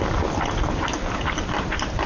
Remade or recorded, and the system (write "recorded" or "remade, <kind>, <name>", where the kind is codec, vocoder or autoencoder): recorded